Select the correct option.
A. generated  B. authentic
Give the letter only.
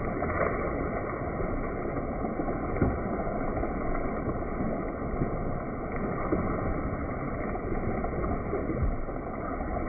B